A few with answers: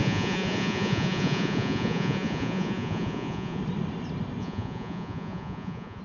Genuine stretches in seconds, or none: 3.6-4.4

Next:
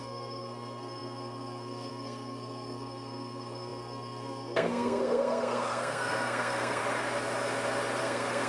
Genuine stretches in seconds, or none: 6.8-8.0